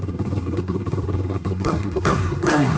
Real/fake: fake